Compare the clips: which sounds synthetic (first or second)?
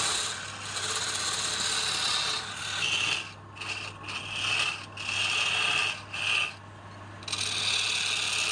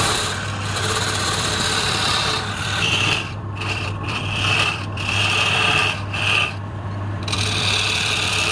second